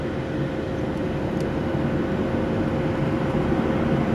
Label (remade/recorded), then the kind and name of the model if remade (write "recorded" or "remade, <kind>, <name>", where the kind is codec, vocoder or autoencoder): recorded